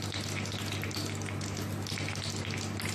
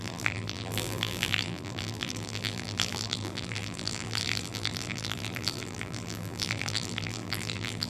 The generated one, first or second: second